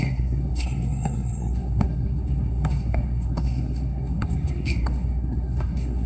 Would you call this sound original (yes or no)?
no